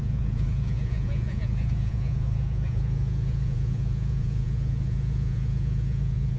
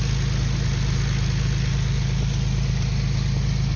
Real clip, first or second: second